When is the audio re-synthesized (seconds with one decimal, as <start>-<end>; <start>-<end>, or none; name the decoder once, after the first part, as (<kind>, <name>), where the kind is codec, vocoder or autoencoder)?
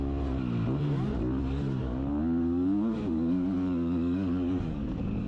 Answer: 1.8-5.3 (codec, DAC)